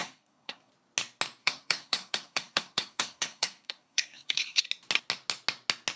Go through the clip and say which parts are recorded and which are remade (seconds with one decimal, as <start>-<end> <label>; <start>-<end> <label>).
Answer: 0.0-0.7 remade; 0.7-1.4 recorded; 1.4-4.6 remade; 4.6-6.0 recorded